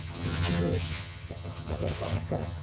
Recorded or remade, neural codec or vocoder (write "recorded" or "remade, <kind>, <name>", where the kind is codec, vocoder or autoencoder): remade, vocoder, HiFi-GAN